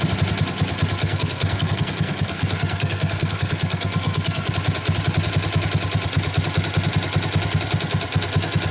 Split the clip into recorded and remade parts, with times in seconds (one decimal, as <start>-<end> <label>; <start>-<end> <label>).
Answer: 0.0-1.0 recorded; 1.0-4.5 remade; 4.5-8.7 recorded